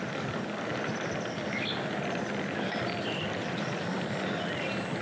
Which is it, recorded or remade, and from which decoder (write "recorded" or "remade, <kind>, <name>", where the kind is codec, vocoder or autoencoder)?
recorded